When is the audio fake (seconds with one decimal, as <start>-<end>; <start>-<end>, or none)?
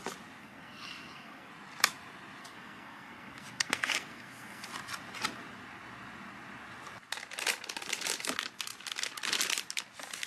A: 0.4-1.5; 2.4-4.7